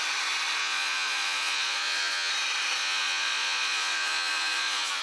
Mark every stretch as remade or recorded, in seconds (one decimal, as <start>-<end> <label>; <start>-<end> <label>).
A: 0.0-0.6 recorded; 0.6-2.3 remade; 2.3-2.8 recorded; 2.8-5.0 remade